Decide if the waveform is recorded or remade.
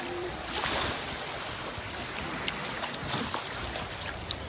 recorded